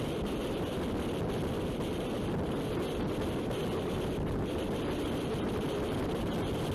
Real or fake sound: real